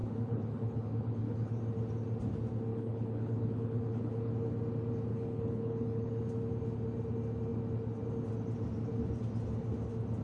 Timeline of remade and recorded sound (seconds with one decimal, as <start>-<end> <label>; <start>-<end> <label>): 0.0-1.6 remade; 1.6-2.7 recorded; 2.7-4.3 remade; 4.3-5.1 recorded; 5.1-6.2 remade; 6.2-10.2 recorded